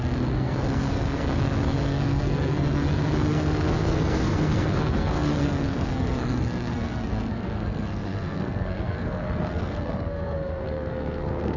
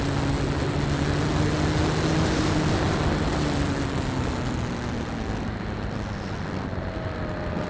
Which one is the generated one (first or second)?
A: first